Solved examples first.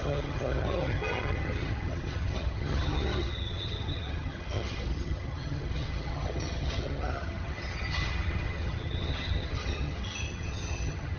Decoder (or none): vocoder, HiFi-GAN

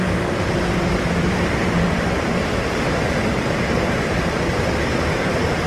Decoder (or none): vocoder, BigVGAN v2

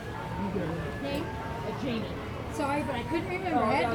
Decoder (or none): none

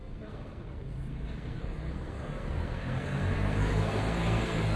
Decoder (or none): codec, SNAC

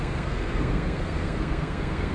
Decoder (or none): codec, SNAC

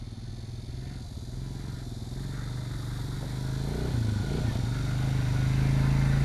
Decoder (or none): none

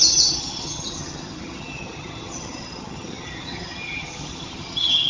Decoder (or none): vocoder, HiFi-GAN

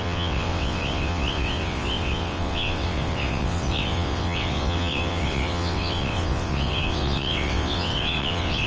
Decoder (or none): vocoder, WaveNeXt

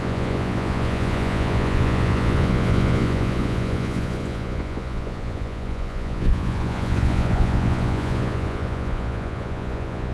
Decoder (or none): vocoder, Vocos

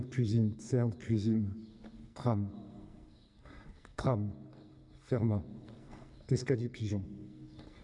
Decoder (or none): codec, SNAC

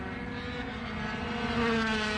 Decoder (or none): none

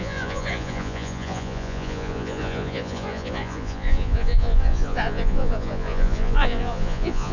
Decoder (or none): vocoder, Vocos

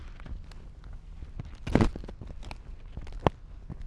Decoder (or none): none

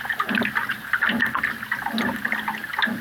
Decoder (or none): none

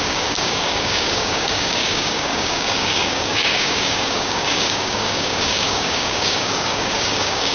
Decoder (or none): codec, DAC